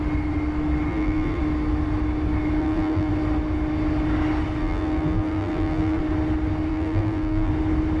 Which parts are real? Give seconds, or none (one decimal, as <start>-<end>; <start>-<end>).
0.0-0.9; 1.4-2.6; 3.1-4.6; 6.0-6.7; 7.5-8.0

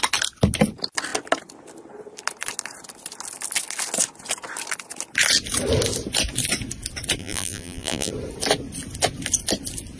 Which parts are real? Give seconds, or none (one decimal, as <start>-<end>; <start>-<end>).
0.0-7.2; 8.1-10.0

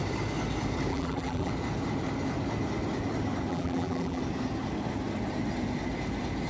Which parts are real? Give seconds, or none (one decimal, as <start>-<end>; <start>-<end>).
0.0-0.9; 1.5-3.5; 4.2-6.5

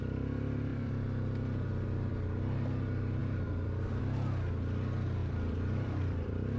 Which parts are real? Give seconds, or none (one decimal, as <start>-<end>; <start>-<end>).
0.0-0.7; 2.1-3.2; 4.0-5.2

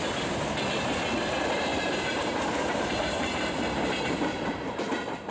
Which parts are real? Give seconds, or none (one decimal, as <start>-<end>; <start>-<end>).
0.0-1.7